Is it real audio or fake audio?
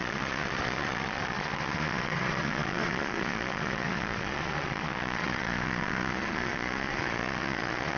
fake